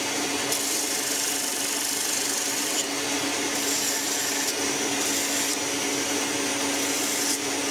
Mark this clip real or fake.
real